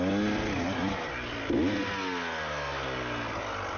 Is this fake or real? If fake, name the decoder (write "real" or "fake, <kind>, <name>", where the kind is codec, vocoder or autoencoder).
real